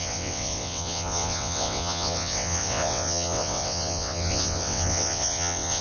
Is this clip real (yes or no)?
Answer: no